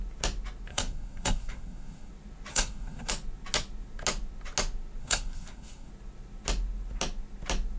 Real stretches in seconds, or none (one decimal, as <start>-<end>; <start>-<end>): 0.0-0.7; 2.1-2.5; 3.1-5.0; 5.9-7.8